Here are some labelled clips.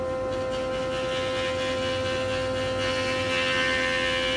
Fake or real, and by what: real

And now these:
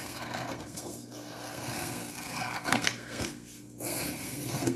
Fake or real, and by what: fake, codec, SNAC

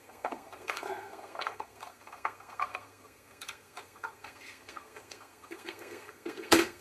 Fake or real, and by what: fake, codec, SNAC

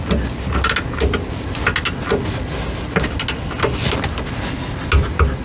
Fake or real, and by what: real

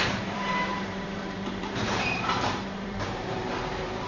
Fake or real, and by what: fake, vocoder, BigVGAN v2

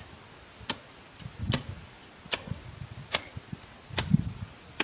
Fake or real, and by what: real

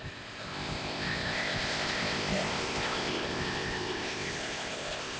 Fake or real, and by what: fake, codec, ZipCodec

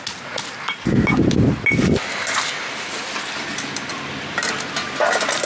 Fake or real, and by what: real